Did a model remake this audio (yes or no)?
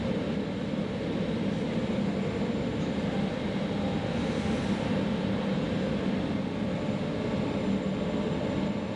yes